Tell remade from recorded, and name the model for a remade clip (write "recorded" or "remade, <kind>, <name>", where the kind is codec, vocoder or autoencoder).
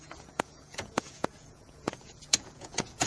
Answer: remade, vocoder, Vocos